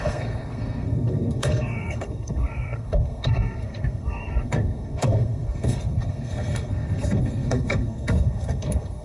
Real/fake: fake